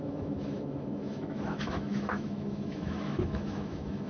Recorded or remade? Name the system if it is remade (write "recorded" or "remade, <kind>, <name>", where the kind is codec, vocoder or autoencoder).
remade, autoencoder, DAC-VAE